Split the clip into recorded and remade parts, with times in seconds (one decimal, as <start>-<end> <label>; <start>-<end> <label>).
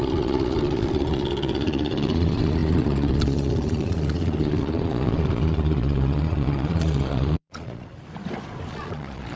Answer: 0.0-7.9 remade; 7.9-8.7 recorded; 8.7-9.4 remade